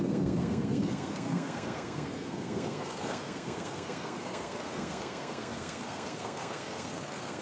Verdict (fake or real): fake